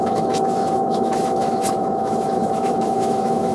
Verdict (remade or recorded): remade